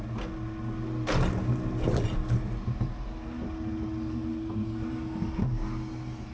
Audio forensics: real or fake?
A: real